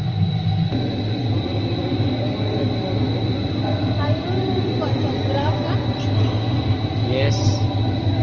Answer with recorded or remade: recorded